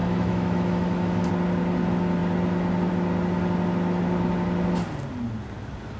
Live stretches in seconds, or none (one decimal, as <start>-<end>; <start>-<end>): 1.3-6.0